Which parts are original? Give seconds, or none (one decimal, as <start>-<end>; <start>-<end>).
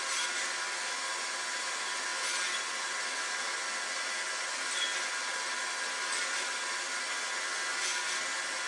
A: 0.0-8.7